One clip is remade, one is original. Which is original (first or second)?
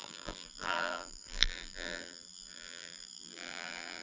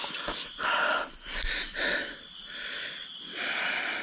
second